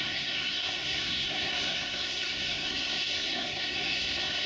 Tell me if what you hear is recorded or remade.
remade